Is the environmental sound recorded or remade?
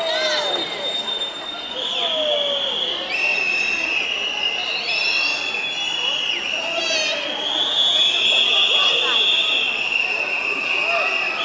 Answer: recorded